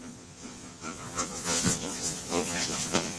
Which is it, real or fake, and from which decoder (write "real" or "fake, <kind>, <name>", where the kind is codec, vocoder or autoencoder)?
fake, vocoder, Vocos